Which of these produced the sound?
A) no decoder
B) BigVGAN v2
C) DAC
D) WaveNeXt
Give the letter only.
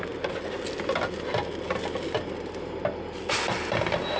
A